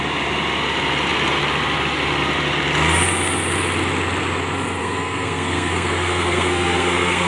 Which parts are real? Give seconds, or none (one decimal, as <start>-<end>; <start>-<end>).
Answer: 0.0-4.8